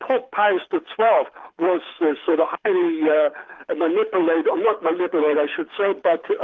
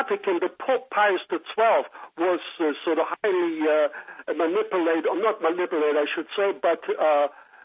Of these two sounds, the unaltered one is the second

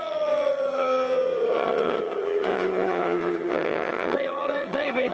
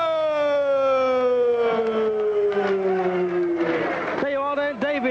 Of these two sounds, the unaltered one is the second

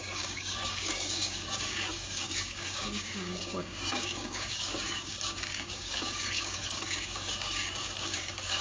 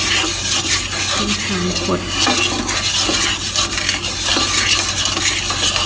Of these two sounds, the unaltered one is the second